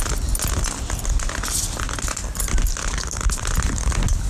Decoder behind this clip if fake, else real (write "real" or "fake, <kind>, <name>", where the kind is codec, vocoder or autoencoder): real